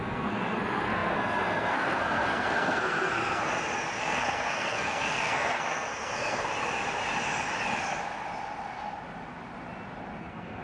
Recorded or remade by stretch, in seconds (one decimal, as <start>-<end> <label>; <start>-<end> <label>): 0.0-3.4 remade; 3.4-4.0 recorded; 4.0-6.5 remade; 6.5-10.2 recorded; 10.2-10.6 remade